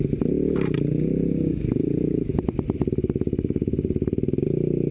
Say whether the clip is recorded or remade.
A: recorded